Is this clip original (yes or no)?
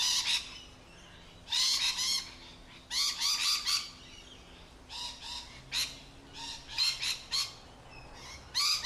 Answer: yes